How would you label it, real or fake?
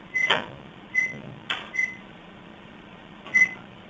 fake